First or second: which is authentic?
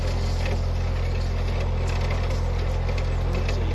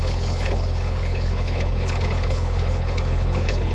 first